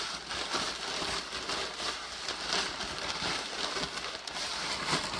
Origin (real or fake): real